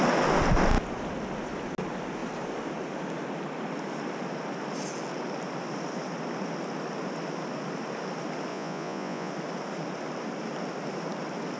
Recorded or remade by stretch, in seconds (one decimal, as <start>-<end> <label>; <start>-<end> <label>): 0.0-8.5 recorded; 8.5-9.3 remade; 9.3-11.6 recorded